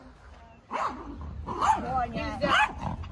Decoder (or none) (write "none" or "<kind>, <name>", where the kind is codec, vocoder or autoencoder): none